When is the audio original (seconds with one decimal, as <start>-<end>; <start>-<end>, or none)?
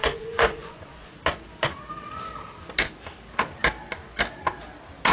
1.1-5.1